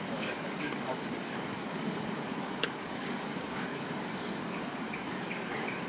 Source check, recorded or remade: remade